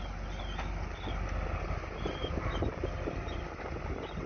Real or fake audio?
real